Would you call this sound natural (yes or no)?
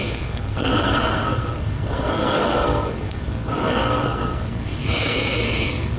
no